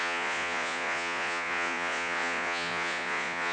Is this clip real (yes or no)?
no